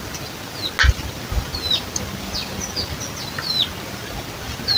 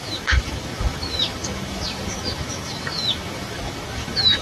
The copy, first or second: second